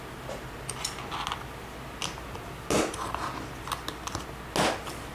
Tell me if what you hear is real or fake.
real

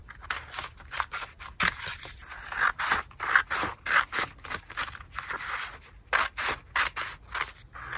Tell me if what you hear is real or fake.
real